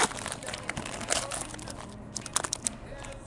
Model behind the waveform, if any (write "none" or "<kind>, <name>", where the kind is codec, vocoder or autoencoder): none